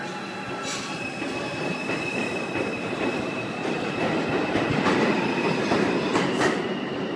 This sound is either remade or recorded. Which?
remade